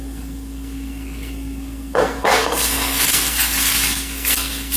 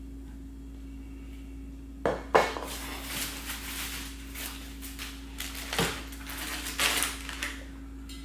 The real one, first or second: second